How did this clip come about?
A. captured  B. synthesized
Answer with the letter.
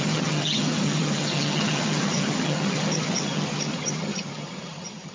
B